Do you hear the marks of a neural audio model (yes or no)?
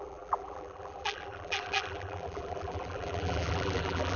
yes